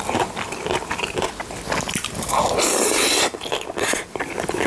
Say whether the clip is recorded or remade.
recorded